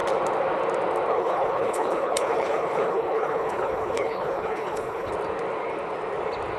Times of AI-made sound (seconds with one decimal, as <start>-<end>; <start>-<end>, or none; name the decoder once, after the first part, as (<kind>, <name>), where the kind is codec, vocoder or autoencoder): 1.1-5.1 (codec, HILCodec)